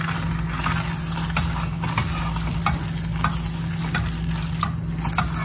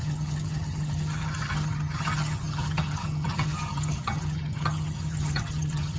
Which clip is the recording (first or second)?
first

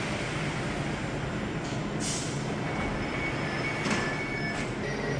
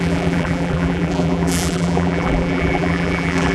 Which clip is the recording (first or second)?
first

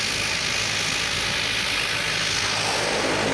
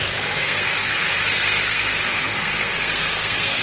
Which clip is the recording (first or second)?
first